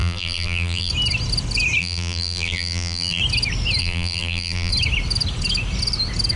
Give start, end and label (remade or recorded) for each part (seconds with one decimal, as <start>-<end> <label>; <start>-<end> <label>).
0.0-0.9 remade; 0.9-1.8 recorded; 1.8-3.2 remade; 3.2-3.8 recorded; 3.8-4.7 remade; 4.7-6.4 recorded